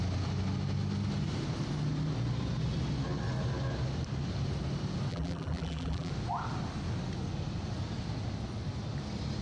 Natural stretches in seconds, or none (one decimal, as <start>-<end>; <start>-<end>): 0.0-5.1; 6.1-9.4